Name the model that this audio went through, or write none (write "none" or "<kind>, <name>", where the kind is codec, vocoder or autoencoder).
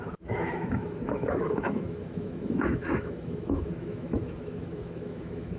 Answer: autoencoder, DAC-VAE